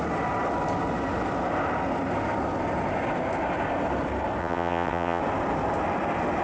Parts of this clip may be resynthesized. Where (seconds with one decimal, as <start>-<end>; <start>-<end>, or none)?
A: 4.4-5.2